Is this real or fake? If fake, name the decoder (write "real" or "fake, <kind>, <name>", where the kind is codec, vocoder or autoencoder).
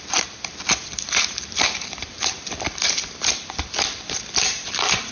fake, vocoder, BigVGAN v2